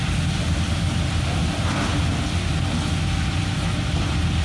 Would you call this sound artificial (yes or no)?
no